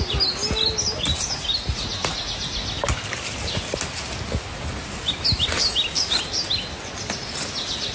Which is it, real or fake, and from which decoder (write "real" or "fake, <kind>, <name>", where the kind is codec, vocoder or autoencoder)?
real